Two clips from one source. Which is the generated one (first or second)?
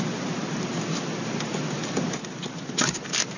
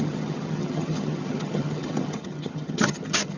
second